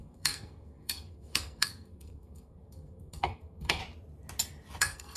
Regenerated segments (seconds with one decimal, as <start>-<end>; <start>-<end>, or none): 0.0-3.8; 4.8-5.2